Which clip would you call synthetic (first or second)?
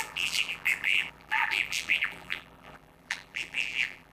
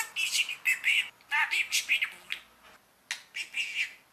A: first